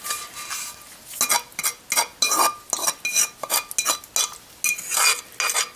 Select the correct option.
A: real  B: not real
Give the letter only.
A